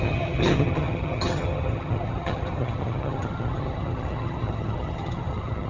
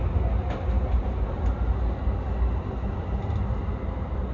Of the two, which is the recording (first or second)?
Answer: second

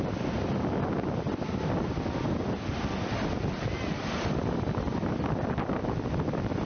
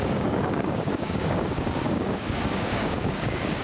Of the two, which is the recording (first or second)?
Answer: first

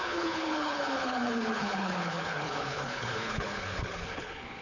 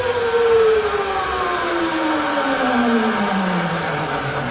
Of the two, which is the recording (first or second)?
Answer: second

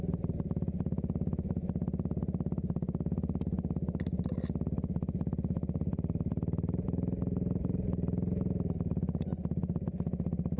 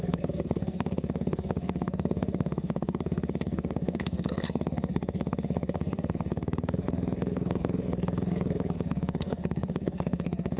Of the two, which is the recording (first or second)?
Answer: first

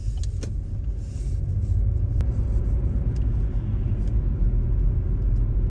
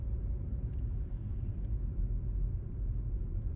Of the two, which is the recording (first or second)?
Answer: first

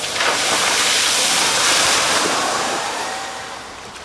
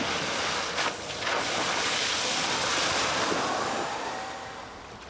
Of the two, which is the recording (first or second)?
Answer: second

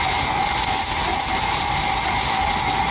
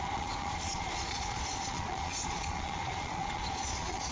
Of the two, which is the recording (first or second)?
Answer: first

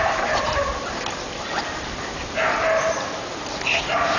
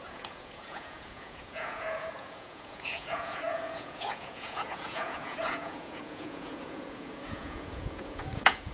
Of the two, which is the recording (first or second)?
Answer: first